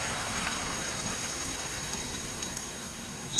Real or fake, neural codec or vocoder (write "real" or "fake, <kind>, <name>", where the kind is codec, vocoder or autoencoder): fake, codec, SNAC